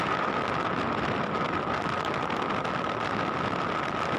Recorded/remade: recorded